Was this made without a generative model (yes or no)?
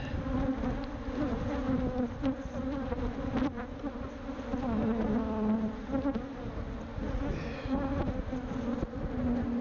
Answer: yes